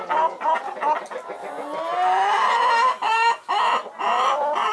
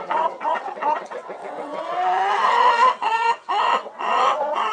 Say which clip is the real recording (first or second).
first